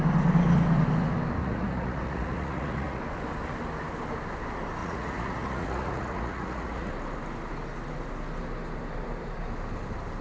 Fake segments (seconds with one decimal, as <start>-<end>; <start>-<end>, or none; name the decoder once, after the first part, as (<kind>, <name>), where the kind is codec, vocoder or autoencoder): 1.4-3.0 (vocoder, Vocos); 4.8-6.9